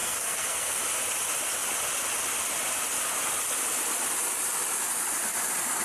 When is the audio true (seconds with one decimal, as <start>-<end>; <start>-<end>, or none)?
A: 0.8-5.8